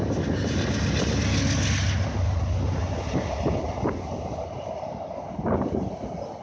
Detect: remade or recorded recorded